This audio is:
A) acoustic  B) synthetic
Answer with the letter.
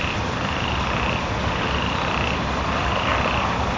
A